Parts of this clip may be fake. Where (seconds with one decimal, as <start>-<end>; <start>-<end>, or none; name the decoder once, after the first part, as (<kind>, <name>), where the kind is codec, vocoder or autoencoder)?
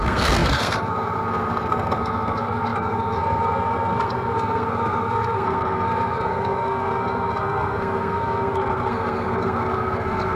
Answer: 0.0-10.4 (codec, SNAC)